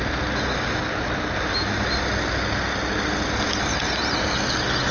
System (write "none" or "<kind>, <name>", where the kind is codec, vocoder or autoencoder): none